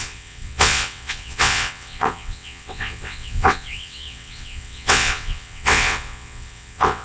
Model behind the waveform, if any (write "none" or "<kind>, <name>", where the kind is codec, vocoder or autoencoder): vocoder, WaveNeXt